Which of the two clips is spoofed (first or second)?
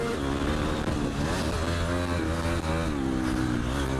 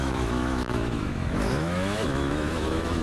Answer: second